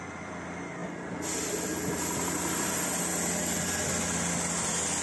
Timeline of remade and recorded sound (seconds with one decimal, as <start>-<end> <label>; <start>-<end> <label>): 0.0-5.0 recorded